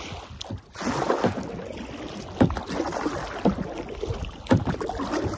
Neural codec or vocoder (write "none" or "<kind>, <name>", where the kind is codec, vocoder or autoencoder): none